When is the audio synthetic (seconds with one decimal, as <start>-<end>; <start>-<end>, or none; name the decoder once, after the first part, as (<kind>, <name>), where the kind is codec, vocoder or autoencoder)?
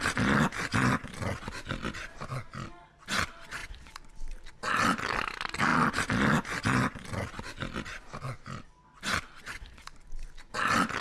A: none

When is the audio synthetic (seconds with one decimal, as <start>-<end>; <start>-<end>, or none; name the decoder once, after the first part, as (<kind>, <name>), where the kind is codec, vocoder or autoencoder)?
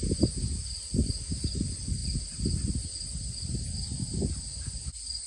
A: none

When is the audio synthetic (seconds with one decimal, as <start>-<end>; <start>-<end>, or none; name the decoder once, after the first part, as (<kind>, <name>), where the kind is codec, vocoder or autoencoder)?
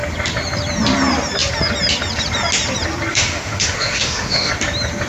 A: 3.1-4.5 (autoencoder, DAC-VAE)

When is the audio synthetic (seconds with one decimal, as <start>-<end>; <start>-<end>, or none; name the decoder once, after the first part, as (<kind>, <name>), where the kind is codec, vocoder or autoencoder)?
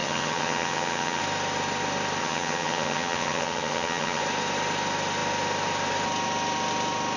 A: 0.0-1.2 (vocoder, HiFi-GAN); 2.2-4.2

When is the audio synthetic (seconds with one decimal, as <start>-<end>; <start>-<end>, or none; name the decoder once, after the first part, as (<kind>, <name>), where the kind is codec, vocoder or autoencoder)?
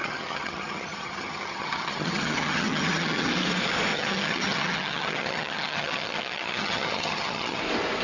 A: 0.0-3.3 (vocoder, HiFi-GAN); 3.9-7.6